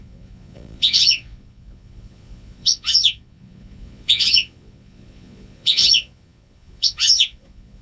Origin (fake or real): fake